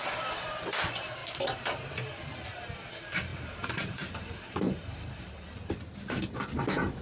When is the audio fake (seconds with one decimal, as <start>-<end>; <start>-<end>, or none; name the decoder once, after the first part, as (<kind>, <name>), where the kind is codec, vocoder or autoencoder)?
1.2-2.1 (vocoder, BigVGAN v2); 3.3-5.3